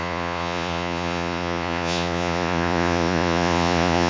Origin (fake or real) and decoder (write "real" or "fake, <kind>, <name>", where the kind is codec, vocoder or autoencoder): fake, vocoder, Vocos